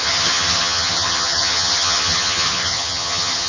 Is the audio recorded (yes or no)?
no